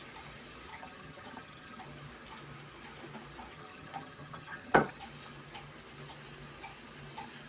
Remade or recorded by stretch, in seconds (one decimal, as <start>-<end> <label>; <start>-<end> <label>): 0.0-0.7 recorded; 0.7-1.8 remade; 1.8-3.5 recorded; 3.5-4.9 remade; 4.9-7.5 recorded